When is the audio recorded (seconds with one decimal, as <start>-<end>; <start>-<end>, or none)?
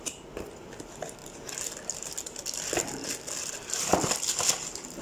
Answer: 0.0-5.0